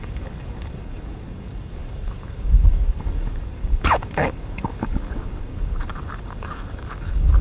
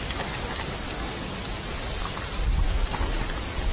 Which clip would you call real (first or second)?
second